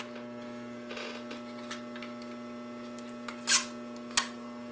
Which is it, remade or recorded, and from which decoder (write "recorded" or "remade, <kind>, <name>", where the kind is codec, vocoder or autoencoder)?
recorded